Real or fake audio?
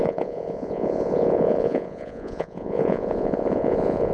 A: fake